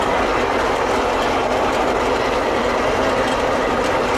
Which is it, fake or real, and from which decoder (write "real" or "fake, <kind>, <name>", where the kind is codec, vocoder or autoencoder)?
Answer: fake, vocoder, BigVGAN v2